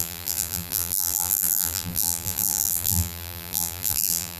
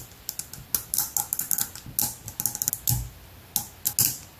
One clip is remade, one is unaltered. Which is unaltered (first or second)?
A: second